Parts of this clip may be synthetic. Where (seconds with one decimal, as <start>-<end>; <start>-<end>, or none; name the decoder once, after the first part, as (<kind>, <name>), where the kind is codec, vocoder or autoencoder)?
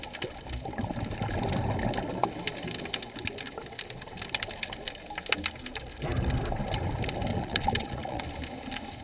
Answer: 7.3-8.2 (vocoder, Vocos)